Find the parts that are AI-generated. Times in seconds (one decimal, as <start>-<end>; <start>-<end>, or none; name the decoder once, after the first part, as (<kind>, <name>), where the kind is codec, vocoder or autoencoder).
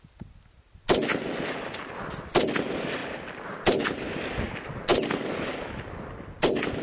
none